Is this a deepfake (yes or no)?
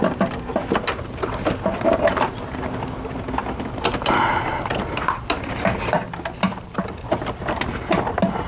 no